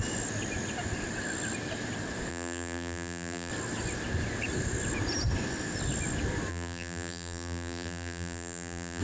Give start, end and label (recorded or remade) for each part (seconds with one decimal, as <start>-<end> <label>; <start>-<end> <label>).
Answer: 0.0-2.3 recorded; 2.3-3.5 remade; 3.5-6.5 recorded; 6.5-9.0 remade